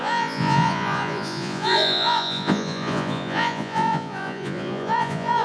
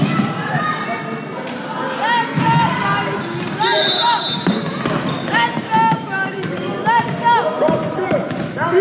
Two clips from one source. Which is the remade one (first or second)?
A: first